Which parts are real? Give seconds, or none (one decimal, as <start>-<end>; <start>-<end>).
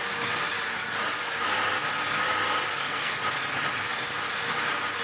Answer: 0.0-2.7; 3.2-5.0